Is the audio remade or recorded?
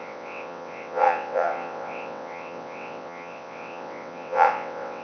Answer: remade